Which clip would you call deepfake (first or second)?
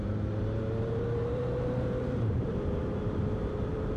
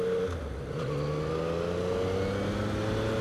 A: first